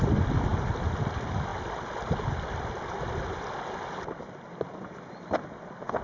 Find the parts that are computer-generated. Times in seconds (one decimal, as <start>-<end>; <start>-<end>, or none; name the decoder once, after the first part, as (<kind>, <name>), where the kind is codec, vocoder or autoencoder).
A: none